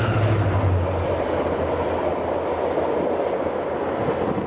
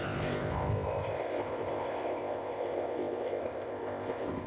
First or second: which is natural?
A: first